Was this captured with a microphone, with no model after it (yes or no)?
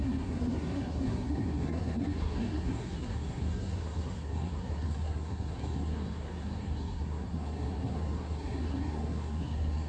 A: no